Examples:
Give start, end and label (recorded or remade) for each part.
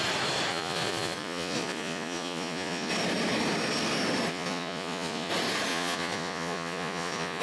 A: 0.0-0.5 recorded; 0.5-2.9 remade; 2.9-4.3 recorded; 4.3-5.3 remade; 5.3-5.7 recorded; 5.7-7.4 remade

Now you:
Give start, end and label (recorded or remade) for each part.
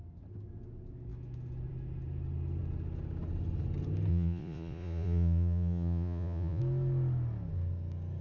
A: 0.0-4.1 recorded; 4.1-6.6 remade; 6.6-8.2 recorded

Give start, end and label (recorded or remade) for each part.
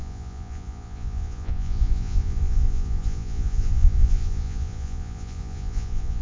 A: 0.0-6.2 remade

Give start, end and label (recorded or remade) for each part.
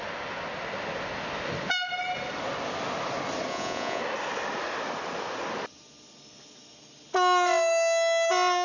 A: 0.0-3.5 recorded; 3.5-4.0 remade; 4.0-8.6 recorded